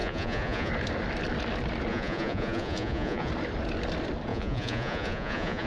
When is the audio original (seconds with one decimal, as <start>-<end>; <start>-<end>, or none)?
0.7-1.9; 3.3-4.3